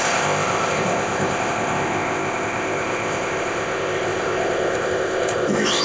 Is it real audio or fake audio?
fake